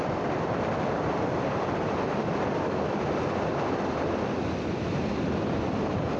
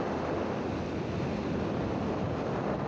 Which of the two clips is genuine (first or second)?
second